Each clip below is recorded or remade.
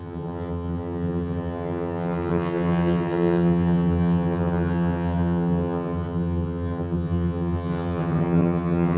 remade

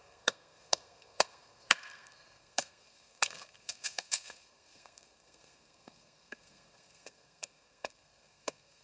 remade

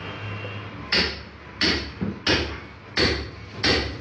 recorded